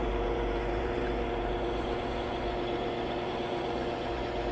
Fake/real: fake